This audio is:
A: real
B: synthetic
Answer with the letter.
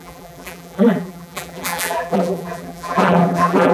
B